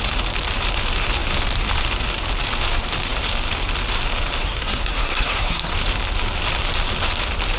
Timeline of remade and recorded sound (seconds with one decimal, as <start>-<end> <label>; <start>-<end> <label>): 0.0-4.4 recorded; 4.4-5.7 remade; 5.7-7.6 recorded